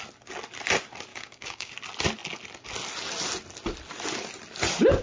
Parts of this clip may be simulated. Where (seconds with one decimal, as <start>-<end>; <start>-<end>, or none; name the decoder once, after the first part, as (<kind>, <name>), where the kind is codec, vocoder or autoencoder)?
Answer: 1.1-1.7 (codec, DAC)